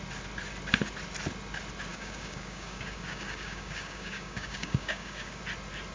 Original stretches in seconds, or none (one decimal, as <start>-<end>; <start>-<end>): 0.0-1.9; 5.4-5.9